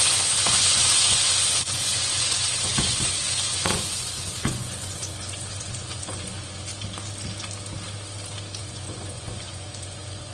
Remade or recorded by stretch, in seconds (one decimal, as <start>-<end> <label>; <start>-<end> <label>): 0.0-6.7 remade; 6.7-8.6 recorded; 8.6-10.3 remade

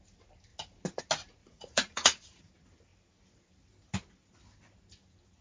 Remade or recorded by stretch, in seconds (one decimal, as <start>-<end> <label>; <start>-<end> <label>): 0.0-1.4 recorded; 1.4-2.4 remade; 2.4-5.4 recorded

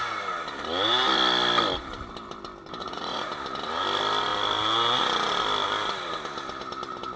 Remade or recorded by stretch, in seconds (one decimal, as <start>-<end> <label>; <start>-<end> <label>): 0.0-2.8 recorded; 2.8-3.3 remade; 3.3-7.2 recorded

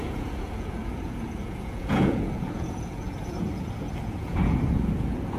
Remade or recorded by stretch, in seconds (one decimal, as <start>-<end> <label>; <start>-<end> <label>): 0.0-5.4 remade

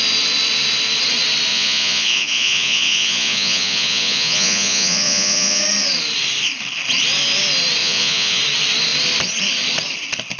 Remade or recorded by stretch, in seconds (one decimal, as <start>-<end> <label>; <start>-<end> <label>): 0.0-1.5 recorded; 1.5-5.6 remade; 5.6-7.8 recorded; 7.8-8.4 remade; 8.4-10.4 recorded

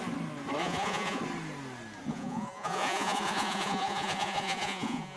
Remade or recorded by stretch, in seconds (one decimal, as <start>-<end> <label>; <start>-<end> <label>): 0.0-0.6 recorded; 0.6-1.2 remade; 1.2-2.1 recorded; 2.1-5.2 remade